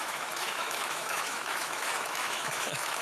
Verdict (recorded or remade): remade